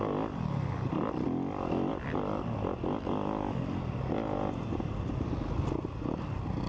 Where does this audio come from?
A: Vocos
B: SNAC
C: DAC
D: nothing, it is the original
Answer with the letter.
D